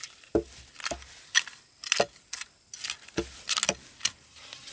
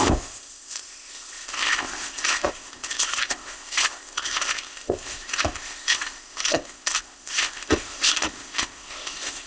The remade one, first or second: second